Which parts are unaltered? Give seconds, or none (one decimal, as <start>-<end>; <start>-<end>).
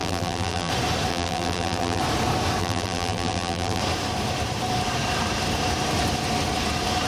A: 0.7-1.1; 2.0-2.6; 3.8-7.1